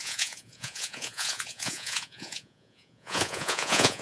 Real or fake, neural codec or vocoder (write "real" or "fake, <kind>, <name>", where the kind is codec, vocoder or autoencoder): fake, vocoder, Vocos